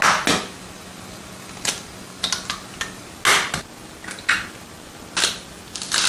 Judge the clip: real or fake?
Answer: real